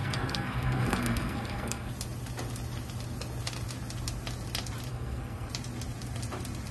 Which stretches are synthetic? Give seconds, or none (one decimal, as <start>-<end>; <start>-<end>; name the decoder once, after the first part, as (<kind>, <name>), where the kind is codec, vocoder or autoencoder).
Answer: 0.0-1.9 (codec, SNAC); 4.9-5.5